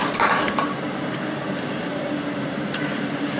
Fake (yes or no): yes